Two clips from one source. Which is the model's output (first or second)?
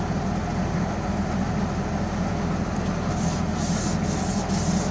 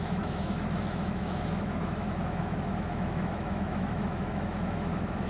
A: second